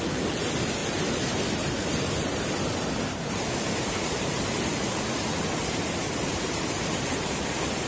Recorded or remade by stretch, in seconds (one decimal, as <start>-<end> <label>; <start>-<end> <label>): 0.0-7.9 recorded